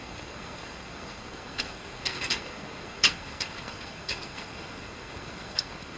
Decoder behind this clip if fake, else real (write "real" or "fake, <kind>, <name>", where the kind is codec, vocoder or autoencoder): fake, codec, SNAC